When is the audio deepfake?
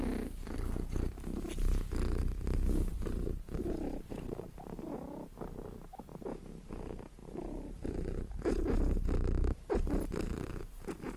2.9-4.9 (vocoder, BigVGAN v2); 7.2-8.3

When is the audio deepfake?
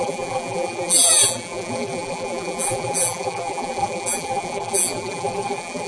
0.0-5.9 (vocoder, BigVGAN v2)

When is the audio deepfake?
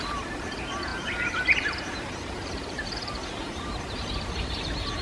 0.0-5.0 (vocoder, BigVGAN v2)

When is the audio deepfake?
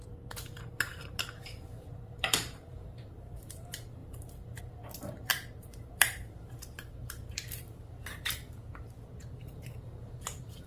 0.0-8.6 (vocoder, BigVGAN v2); 9.4-10.7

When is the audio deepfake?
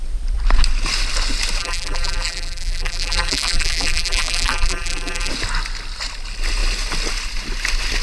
1.6-5.3 (vocoder, BigVGAN v2)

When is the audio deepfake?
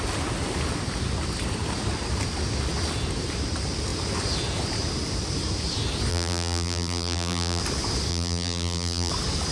6.1-7.6 (vocoder, BigVGAN v2); 8.1-9.1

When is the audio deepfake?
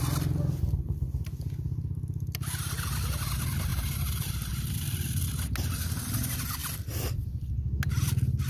3.7-4.3 (vocoder, BigVGAN v2)